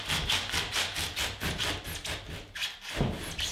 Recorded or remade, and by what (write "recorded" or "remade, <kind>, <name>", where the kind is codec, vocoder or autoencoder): recorded